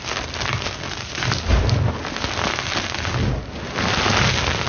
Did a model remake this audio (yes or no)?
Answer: no